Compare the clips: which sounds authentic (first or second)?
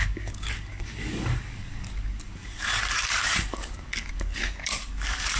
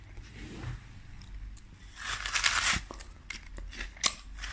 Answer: second